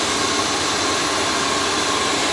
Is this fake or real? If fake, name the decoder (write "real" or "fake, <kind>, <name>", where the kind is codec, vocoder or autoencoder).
real